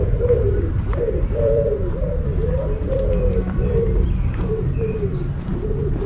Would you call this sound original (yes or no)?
no